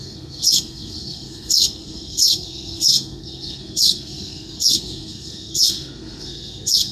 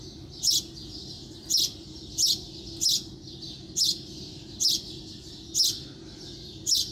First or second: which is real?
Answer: second